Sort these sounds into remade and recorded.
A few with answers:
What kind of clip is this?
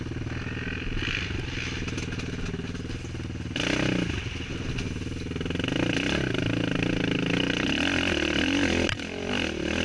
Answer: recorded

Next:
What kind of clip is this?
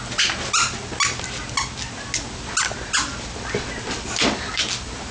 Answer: recorded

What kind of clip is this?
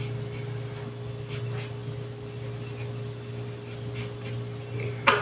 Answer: recorded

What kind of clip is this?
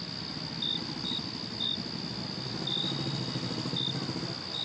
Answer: recorded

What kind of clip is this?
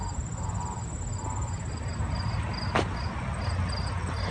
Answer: recorded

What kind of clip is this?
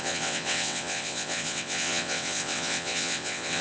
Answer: remade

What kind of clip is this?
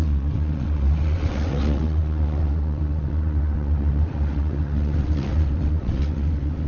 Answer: remade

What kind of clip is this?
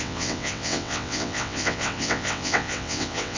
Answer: remade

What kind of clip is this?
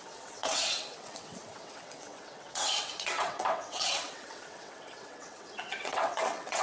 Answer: remade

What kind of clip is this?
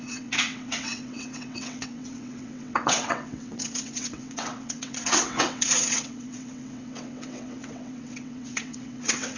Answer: remade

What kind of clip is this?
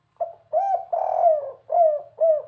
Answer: recorded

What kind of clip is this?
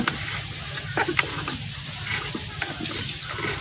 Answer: recorded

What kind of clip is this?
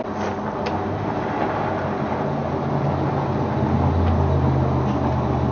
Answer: recorded